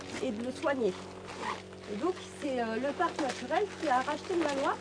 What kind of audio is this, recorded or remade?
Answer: recorded